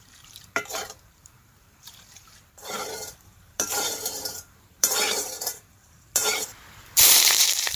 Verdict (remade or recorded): remade